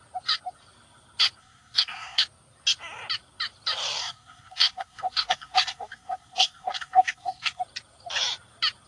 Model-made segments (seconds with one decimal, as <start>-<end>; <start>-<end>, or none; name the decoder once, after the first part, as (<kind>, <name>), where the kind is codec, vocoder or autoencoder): 1.4-2.2 (codec, SNAC); 4.0-7.6